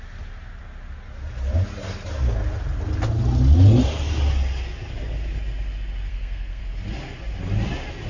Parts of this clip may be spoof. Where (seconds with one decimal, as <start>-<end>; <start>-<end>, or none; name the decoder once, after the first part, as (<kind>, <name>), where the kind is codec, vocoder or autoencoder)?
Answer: 6.1-6.6 (codec, SNAC)